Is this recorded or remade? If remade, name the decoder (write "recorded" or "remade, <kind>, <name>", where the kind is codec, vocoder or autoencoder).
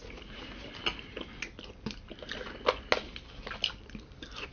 recorded